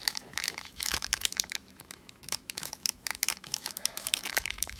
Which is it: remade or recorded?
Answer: remade